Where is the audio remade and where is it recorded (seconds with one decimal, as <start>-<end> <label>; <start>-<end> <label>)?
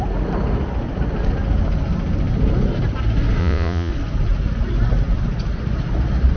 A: 0.0-3.4 recorded; 3.4-3.9 remade; 3.9-6.4 recorded